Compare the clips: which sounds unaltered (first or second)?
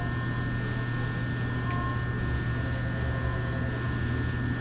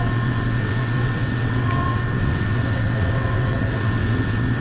first